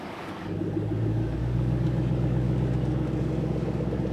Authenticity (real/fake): fake